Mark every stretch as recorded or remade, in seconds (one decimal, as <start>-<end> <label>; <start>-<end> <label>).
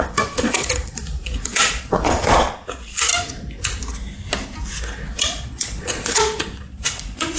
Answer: 0.0-3.1 remade; 3.1-5.1 recorded; 5.1-7.4 remade